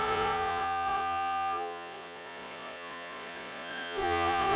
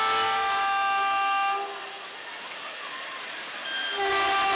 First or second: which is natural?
second